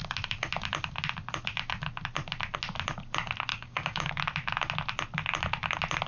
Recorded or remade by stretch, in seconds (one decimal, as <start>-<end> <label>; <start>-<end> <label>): 0.0-3.5 recorded; 3.5-4.1 remade; 4.1-6.1 recorded